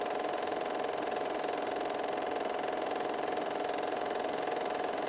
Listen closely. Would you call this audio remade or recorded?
remade